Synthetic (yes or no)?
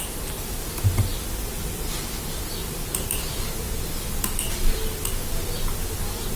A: no